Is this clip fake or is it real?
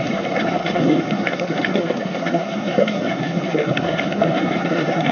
fake